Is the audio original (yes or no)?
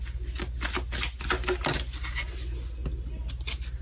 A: yes